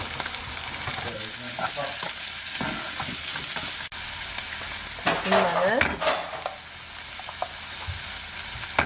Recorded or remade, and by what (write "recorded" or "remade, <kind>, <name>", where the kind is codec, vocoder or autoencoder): recorded